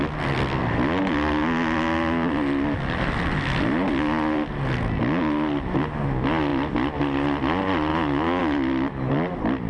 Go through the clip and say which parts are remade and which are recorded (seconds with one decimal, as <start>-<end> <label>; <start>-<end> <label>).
0.0-7.9 recorded; 7.9-8.4 remade; 8.4-9.7 recorded